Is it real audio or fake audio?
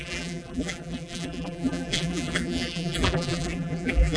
fake